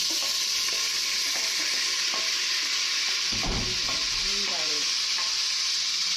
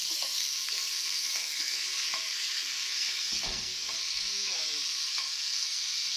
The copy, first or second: second